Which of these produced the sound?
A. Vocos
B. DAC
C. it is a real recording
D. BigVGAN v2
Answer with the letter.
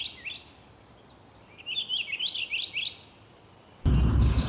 C